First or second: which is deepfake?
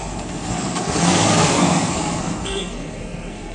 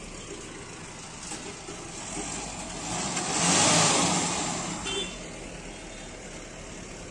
first